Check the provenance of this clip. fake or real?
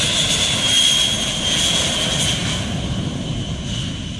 real